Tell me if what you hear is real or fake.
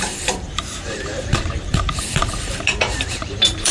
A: fake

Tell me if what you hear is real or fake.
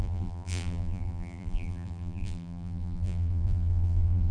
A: fake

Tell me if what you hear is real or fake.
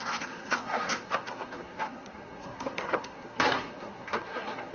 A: fake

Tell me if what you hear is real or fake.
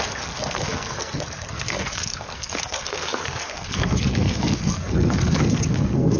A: fake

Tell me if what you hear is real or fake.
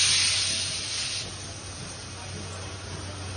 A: real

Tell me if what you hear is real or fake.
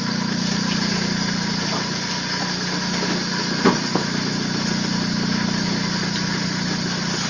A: real